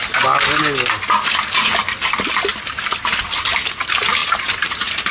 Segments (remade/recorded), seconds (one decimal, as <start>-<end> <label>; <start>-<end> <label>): 0.0-4.2 recorded; 4.2-5.1 remade